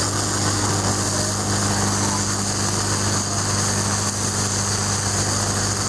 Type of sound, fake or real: real